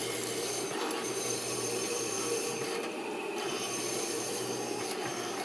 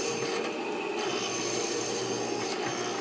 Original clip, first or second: second